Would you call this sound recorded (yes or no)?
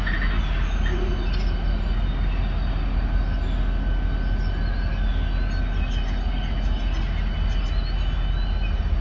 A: yes